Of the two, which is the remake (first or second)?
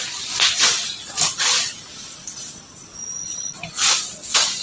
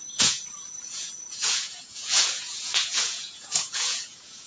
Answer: second